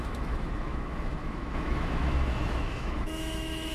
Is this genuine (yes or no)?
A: no